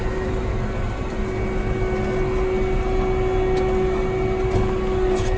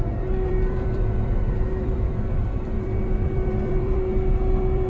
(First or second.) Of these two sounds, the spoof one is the second